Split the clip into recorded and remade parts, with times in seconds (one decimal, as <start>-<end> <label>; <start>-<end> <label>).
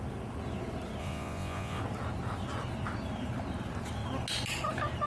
0.0-1.0 recorded; 1.0-1.8 remade; 1.8-5.1 recorded